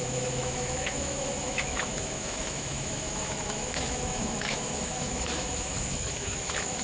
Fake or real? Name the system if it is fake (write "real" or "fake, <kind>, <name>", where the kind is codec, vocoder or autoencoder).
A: fake, autoencoder, DAC-VAE